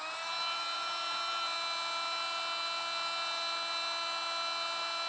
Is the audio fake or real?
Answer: real